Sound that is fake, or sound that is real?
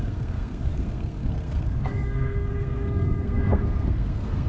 fake